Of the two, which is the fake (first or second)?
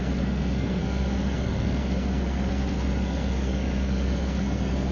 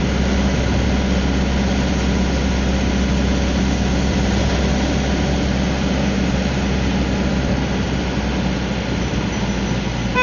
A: first